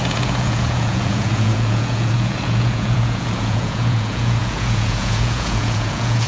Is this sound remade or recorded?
remade